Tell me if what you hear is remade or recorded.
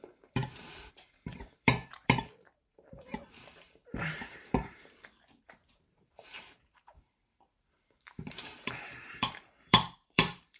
remade